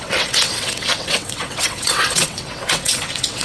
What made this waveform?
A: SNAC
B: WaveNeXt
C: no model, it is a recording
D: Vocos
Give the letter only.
B